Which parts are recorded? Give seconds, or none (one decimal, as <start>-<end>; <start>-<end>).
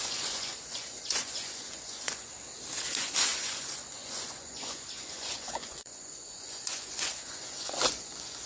2.3-2.9